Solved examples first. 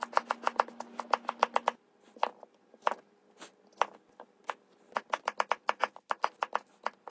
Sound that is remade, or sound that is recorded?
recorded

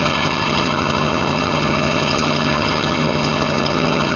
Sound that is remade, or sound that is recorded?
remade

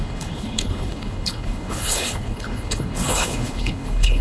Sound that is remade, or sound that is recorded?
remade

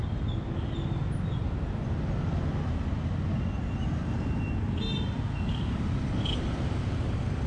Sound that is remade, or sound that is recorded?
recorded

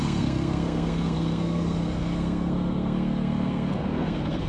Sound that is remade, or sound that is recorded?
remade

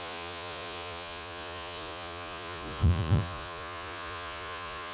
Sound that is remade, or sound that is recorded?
remade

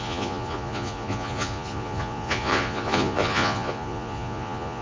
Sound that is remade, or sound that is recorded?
remade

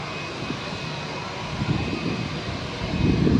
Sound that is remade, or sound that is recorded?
recorded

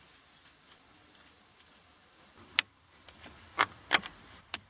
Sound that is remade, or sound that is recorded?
recorded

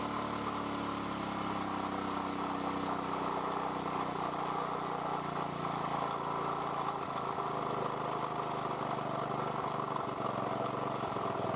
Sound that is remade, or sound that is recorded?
recorded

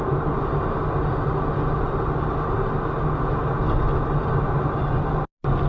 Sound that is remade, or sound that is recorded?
recorded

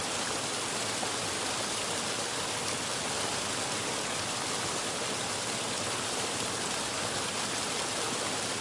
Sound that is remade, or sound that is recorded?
recorded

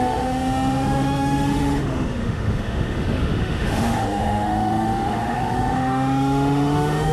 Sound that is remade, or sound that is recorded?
remade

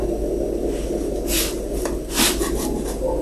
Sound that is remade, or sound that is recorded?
recorded